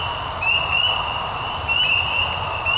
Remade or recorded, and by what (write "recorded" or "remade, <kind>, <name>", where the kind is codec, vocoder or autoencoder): remade, vocoder, BigVGAN v2